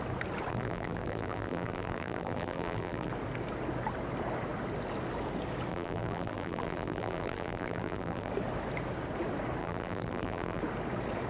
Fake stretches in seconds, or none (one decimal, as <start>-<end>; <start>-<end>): 0.5-3.1; 5.7-8.3; 9.6-10.6